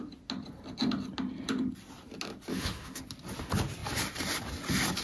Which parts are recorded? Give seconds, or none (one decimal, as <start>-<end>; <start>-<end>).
0.0-2.5; 3.0-5.0